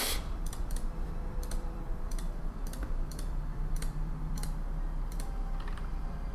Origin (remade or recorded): remade